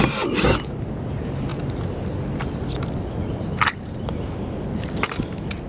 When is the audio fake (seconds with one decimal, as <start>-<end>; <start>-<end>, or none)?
none